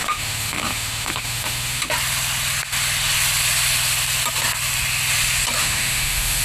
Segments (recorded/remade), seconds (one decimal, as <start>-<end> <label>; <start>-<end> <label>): 0.0-1.9 remade; 1.9-5.6 recorded; 5.6-6.4 remade